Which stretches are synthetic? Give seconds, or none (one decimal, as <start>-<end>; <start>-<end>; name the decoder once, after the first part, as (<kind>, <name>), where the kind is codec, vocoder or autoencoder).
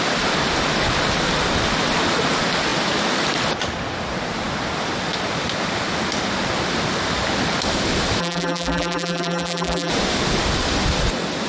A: 8.2-9.9 (vocoder, BigVGAN v2)